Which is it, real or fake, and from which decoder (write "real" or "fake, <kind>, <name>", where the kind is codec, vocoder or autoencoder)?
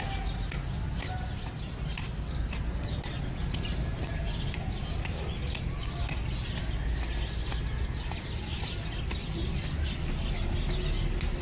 real